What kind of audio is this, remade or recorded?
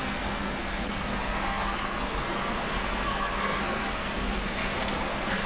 remade